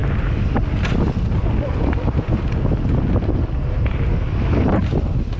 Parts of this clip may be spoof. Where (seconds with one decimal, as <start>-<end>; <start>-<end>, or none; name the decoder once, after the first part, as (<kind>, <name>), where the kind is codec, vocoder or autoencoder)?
none